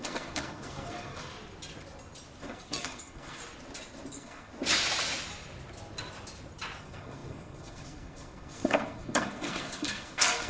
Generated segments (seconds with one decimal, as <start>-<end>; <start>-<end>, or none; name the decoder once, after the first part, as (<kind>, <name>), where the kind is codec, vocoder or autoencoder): 0.0-1.3 (codec, SNAC); 2.4-3.4; 4.1-4.5; 6.8-10.5